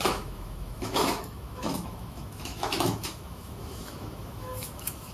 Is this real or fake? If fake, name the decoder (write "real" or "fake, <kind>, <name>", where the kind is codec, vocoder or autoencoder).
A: fake, autoencoder, DAC-VAE